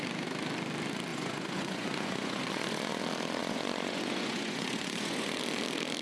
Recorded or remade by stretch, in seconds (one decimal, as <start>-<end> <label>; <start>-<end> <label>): 0.0-1.1 recorded; 1.1-3.0 remade; 3.0-3.4 recorded; 3.4-5.4 remade; 5.4-6.0 recorded